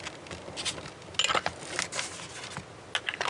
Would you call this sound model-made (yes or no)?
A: no